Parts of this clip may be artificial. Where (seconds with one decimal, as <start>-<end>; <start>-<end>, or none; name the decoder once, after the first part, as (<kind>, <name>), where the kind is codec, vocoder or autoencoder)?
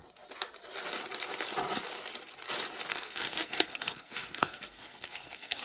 2.9-5.6 (codec, SNAC)